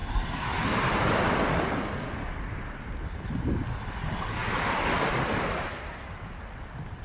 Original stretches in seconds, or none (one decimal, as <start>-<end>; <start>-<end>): 0.0-7.0